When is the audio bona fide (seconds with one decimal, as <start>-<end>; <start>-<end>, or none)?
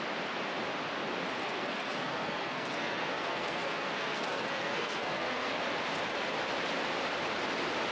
0.0-1.4; 5.5-7.9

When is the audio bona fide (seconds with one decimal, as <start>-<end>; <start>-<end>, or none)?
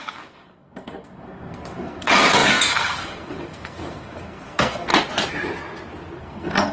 4.9-6.2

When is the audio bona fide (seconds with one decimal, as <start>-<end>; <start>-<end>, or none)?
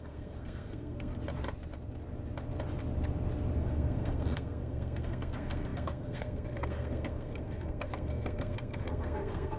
1.1-3.6